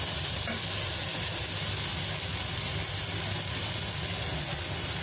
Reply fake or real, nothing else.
real